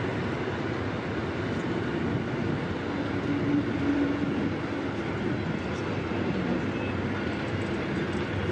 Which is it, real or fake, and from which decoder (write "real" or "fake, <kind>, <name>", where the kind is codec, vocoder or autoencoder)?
real